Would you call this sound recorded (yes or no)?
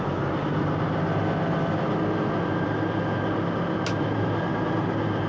yes